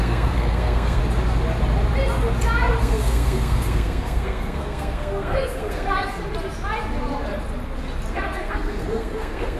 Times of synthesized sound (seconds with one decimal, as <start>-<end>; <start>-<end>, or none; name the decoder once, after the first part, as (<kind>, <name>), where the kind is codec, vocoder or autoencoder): 0.0-1.0 (codec, SNAC); 2.8-6.2; 8.1-9.6